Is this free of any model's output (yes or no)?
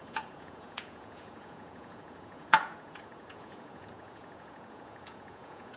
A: no